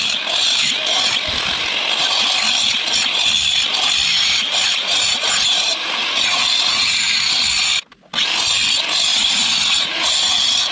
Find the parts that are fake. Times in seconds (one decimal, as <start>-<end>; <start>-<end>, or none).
4.1-7.4; 9.1-10.7